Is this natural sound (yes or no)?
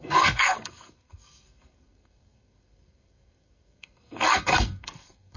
no